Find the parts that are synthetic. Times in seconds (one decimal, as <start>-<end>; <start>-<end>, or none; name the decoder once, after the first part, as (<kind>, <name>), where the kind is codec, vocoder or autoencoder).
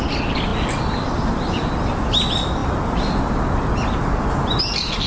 none